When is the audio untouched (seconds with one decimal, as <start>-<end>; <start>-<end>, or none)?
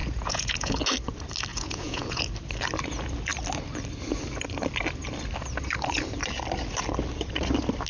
0.7-1.5; 2.2-7.9